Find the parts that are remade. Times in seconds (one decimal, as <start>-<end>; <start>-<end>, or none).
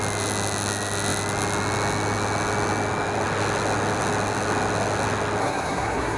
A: 5.4-6.2